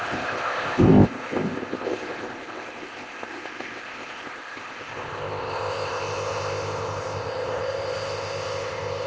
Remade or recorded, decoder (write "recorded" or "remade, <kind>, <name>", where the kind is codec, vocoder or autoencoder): remade, codec, ZipCodec